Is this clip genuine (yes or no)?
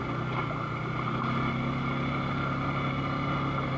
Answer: yes